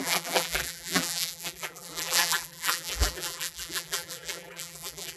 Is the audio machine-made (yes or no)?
yes